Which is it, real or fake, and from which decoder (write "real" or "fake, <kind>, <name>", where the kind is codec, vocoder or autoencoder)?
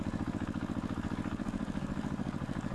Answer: fake, codec, DAC